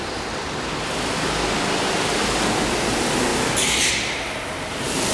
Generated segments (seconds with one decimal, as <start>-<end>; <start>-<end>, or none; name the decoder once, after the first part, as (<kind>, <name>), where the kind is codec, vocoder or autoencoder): none